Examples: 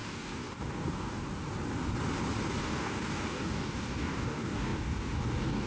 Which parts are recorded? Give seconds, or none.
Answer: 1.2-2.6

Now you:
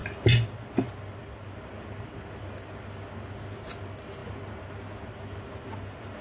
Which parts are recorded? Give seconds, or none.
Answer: 0.0-6.2